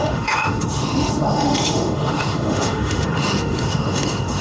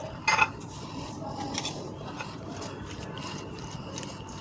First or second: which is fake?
first